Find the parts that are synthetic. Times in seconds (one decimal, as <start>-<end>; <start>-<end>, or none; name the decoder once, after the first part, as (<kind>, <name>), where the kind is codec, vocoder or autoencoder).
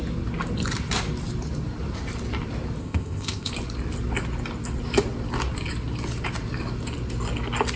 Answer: 2.8-3.5 (codec, ZipCodec)